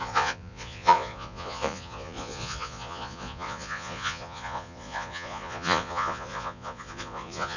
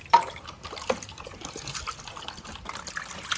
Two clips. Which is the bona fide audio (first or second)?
second